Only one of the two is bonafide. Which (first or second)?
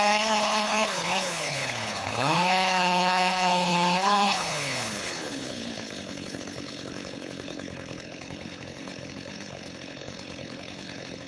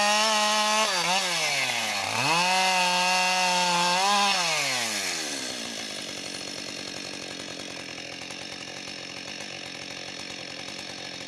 second